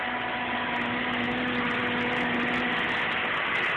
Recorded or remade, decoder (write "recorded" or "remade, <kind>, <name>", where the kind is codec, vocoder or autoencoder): recorded